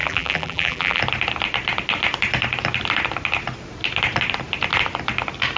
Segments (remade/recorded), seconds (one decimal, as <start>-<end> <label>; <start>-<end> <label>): 0.0-1.0 remade; 1.0-5.6 recorded